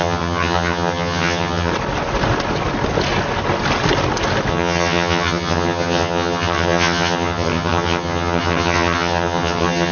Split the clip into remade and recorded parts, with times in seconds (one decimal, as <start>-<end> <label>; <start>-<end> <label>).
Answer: 0.0-1.7 remade; 1.7-4.5 recorded; 4.5-9.9 remade